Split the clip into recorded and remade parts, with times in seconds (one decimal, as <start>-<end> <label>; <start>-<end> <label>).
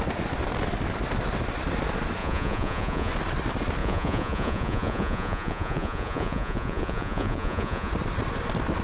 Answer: 0.0-2.2 recorded; 2.2-3.1 remade; 3.1-3.8 recorded; 3.8-7.9 remade; 7.9-8.8 recorded